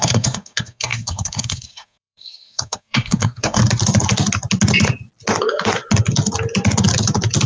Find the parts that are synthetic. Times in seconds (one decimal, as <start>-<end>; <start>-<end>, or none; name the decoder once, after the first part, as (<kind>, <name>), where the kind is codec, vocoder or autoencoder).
0.0-3.6 (codec, SNAC)